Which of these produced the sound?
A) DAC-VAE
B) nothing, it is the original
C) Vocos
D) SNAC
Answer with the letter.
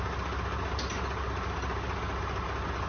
B